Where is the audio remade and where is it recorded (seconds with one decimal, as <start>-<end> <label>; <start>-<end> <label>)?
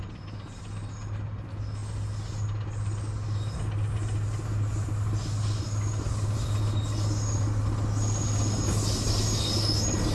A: 0.0-10.1 recorded